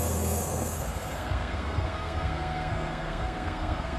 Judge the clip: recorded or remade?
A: remade